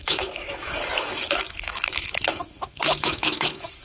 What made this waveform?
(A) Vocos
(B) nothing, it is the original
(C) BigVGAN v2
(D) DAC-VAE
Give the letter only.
D